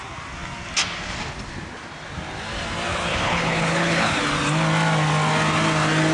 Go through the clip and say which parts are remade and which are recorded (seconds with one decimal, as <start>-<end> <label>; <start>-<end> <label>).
0.0-2.9 recorded; 2.9-4.2 remade; 4.2-6.1 recorded